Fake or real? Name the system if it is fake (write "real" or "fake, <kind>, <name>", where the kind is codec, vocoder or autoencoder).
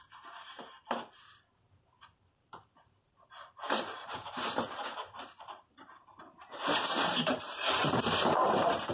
fake, vocoder, BigVGAN v2